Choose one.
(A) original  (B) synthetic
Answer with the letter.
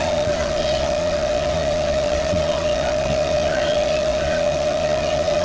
B